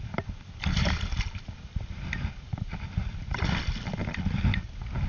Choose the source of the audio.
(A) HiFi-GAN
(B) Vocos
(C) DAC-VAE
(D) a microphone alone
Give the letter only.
D